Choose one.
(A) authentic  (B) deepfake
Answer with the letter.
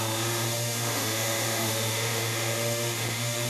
B